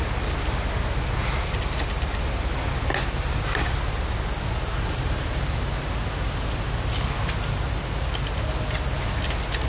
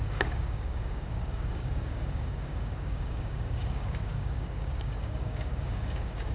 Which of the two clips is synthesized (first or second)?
second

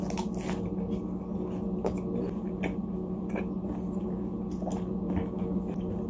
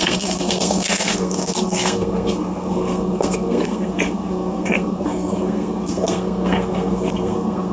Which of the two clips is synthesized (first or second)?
second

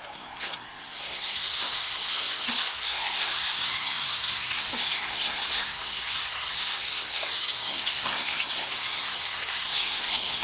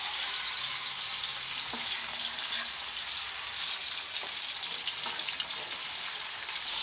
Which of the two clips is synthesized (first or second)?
first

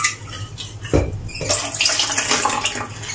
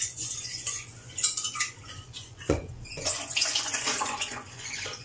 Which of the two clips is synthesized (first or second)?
second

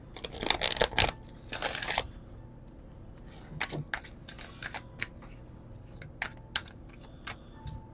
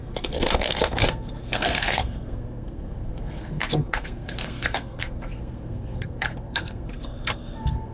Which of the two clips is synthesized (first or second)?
second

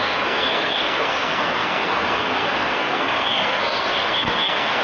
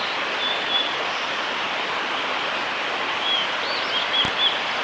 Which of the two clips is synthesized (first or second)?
first